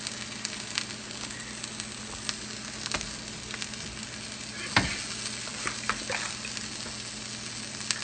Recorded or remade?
recorded